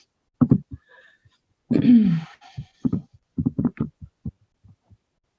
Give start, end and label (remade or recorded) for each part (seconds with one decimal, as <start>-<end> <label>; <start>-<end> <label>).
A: 0.0-1.2 recorded; 1.2-2.2 remade; 2.2-2.6 recorded; 2.6-4.3 remade; 4.3-5.4 recorded